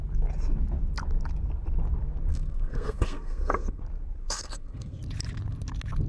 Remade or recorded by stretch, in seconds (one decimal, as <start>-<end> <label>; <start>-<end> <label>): 0.0-2.3 recorded; 2.3-3.8 remade; 3.8-4.2 recorded; 4.2-5.0 remade; 5.0-6.1 recorded